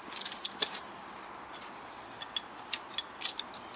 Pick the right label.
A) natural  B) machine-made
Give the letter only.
A